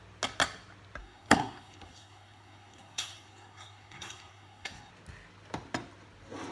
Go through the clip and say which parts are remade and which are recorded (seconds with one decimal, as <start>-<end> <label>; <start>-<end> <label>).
0.0-1.0 recorded; 1.0-4.9 remade; 4.9-6.5 recorded